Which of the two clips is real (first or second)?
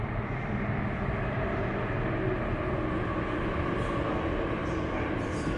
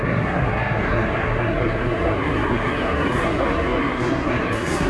first